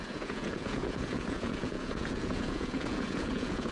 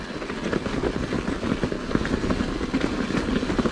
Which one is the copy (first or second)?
first